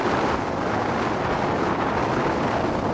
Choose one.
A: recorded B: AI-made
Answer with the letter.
A